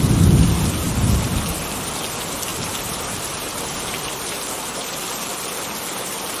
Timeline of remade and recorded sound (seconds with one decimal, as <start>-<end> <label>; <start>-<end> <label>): 0.0-1.3 recorded; 1.3-2.0 remade; 2.0-2.5 recorded; 2.5-5.3 remade; 5.3-6.4 recorded

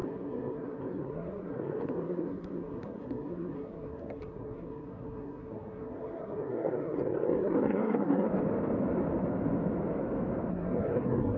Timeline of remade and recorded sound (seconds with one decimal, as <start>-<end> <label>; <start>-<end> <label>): 0.0-8.3 remade; 8.3-10.5 recorded; 10.5-11.4 remade

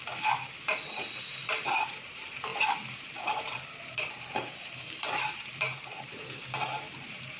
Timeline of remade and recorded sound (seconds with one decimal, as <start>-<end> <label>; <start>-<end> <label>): 0.0-7.4 remade

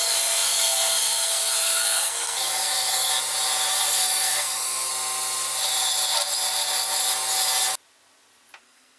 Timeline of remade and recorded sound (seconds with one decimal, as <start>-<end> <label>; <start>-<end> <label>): 0.0-3.1 remade; 3.1-3.7 recorded; 3.7-4.9 remade; 4.9-8.6 recorded; 8.6-9.0 remade

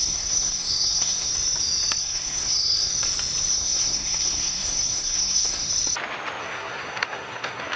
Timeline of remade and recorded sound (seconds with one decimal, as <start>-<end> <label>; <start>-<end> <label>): 0.0-1.3 remade; 1.3-2.0 recorded; 2.0-2.9 remade; 2.9-3.5 recorded; 3.5-5.7 remade; 5.7-6.4 recorded; 6.4-7.8 remade

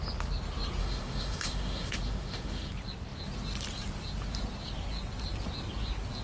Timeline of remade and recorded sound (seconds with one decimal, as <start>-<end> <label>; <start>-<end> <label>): 0.0-0.8 recorded; 0.8-2.7 remade; 2.7-6.2 recorded

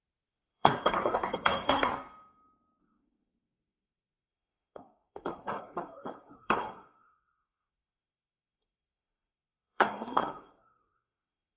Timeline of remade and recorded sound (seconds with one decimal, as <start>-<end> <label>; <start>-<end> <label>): 0.0-1.9 remade; 1.9-2.8 recorded; 2.8-11.6 remade